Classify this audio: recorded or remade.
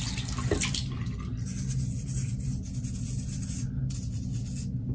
recorded